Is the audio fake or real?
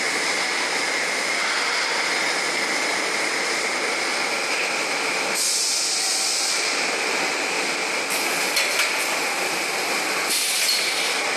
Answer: real